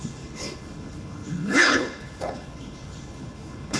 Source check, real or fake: fake